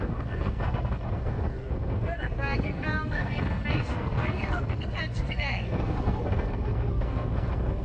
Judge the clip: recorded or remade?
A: remade